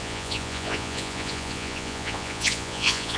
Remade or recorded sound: remade